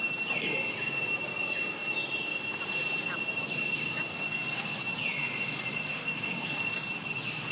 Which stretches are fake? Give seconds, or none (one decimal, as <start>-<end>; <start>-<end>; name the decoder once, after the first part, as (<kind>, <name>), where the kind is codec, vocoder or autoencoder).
4.1-4.8 (codec, SNAC); 5.9-6.9